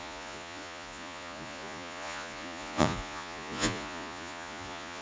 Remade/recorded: remade